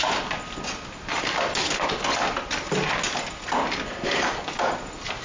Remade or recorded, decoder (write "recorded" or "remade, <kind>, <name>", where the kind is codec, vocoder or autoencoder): recorded